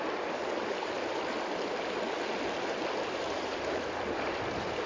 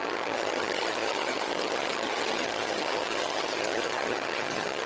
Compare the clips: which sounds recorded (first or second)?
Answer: first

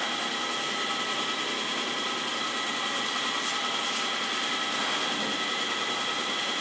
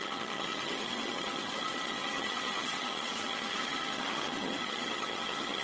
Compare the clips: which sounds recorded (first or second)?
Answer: first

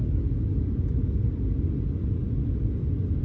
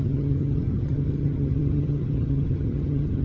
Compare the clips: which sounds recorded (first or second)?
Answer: first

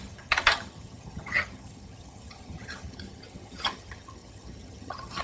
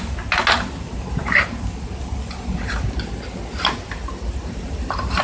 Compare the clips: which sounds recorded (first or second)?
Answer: second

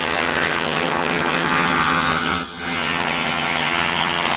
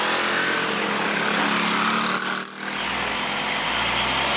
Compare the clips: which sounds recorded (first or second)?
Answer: second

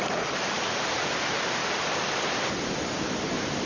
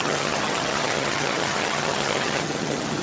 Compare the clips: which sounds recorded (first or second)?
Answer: first